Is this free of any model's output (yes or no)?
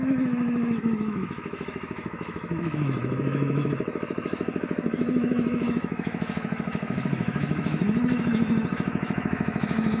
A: no